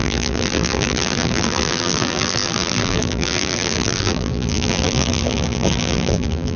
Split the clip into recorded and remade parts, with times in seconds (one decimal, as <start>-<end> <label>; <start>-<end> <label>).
0.0-6.6 remade

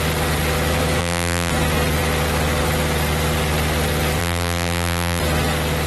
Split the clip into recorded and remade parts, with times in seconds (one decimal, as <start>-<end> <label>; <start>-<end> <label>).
0.0-1.0 recorded; 1.0-1.5 remade; 1.5-4.2 recorded; 4.2-5.2 remade; 5.2-5.9 recorded

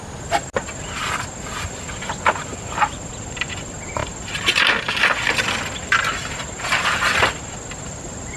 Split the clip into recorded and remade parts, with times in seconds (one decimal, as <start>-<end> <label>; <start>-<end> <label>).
0.0-2.5 recorded; 2.5-3.1 remade; 3.1-8.4 recorded

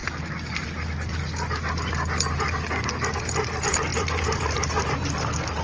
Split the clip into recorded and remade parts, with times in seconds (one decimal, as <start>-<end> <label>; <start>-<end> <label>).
0.0-3.9 recorded; 3.9-5.6 remade